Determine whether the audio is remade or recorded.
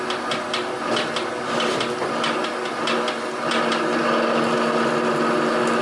recorded